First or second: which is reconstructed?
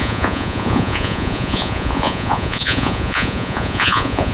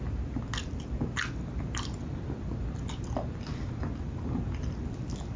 first